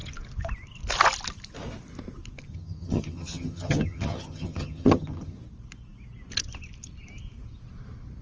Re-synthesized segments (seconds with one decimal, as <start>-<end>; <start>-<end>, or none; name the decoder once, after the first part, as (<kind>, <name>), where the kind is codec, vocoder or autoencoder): 2.5-5.4 (vocoder, HiFi-GAN)

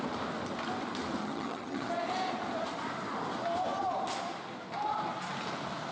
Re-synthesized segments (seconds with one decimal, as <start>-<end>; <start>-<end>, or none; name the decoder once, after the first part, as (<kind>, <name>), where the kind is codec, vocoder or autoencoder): 1.2-1.9 (vocoder, HiFi-GAN)

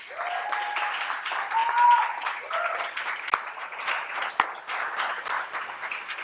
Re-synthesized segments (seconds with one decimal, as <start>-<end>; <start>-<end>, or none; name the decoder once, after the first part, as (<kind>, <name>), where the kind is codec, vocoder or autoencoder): none